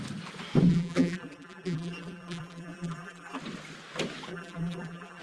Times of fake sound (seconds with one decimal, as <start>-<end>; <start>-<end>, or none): 0.7-3.4; 4.3-5.2